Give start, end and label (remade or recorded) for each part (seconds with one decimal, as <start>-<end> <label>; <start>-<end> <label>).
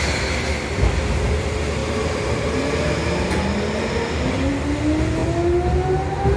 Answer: 0.0-6.4 recorded